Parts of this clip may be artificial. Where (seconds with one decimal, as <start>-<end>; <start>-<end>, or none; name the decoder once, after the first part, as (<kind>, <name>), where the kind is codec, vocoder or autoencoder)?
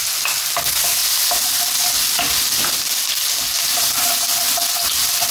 none